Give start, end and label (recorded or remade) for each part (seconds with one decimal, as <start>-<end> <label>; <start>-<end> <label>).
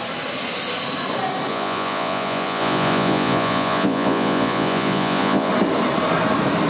0.0-1.5 recorded; 1.5-5.5 remade; 5.5-6.7 recorded